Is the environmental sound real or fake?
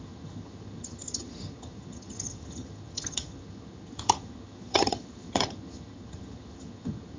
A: fake